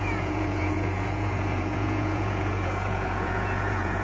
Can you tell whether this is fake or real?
fake